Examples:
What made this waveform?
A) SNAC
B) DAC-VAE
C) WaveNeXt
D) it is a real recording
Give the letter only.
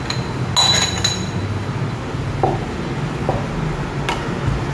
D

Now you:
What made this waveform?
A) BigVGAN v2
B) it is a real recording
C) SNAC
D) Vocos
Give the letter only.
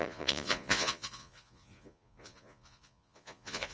D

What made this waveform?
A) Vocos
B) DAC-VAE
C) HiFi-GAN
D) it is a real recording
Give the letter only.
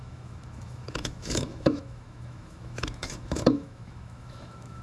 B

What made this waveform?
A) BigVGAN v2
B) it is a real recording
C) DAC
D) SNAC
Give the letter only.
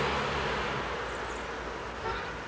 B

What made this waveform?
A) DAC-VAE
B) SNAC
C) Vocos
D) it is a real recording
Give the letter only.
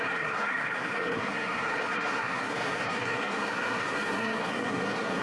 B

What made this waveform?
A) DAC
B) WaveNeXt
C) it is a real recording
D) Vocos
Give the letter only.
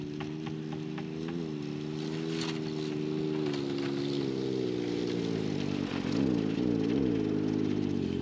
C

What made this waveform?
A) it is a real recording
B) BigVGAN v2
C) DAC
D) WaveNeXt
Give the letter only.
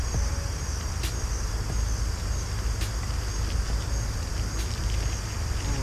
A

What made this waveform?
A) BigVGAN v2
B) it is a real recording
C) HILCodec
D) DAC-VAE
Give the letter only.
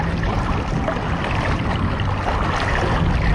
B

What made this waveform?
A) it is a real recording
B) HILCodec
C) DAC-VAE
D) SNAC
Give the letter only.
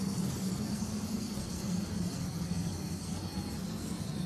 D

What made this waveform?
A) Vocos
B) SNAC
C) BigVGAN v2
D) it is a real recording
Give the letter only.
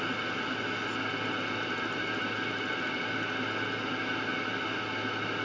D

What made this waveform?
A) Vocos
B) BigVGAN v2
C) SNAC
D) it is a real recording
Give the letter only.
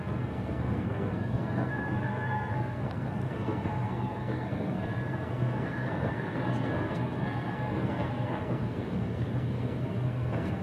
C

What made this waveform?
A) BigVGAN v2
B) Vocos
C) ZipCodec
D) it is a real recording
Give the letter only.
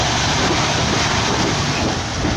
D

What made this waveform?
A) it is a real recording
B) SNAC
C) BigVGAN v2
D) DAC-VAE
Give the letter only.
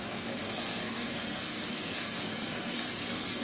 B